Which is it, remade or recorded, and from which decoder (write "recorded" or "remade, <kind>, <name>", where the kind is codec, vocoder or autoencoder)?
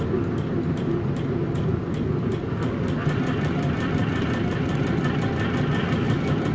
recorded